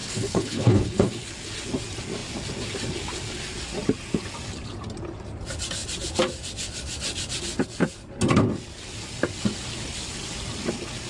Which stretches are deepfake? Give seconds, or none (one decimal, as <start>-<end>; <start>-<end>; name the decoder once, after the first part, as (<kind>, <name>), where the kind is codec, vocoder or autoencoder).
0.0-1.3 (codec, HILCodec)